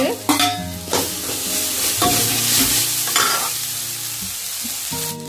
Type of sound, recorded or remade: recorded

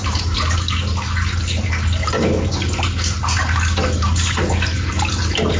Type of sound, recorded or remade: recorded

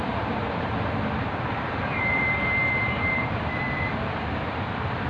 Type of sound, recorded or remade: remade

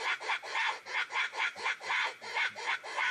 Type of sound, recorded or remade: recorded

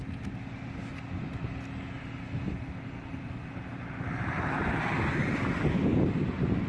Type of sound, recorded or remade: recorded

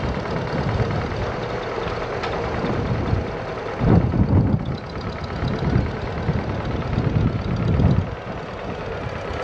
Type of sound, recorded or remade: recorded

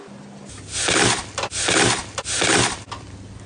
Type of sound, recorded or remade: recorded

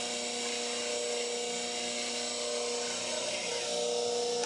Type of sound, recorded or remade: recorded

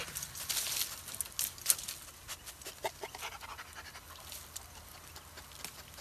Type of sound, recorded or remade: recorded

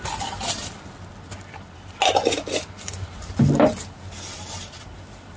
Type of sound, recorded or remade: recorded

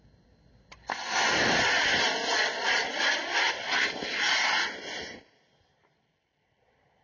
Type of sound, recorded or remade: recorded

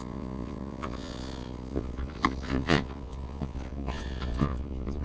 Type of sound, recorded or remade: remade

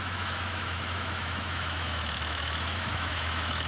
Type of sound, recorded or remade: remade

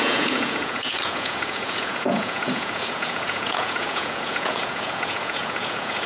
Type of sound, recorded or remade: remade